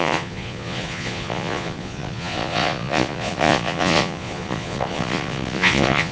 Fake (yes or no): yes